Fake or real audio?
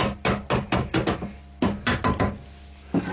real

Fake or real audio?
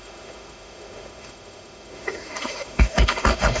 fake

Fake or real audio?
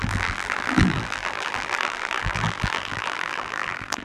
fake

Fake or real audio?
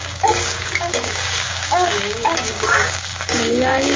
fake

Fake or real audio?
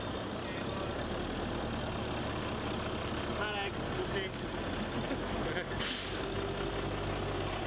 real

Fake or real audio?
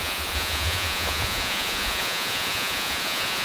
fake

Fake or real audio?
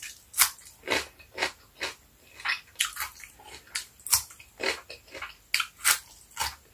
real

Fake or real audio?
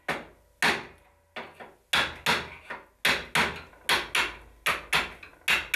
real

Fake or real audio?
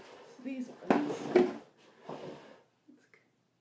real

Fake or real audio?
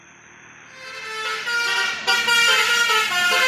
real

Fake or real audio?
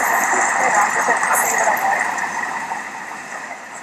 real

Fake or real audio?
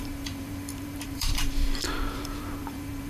fake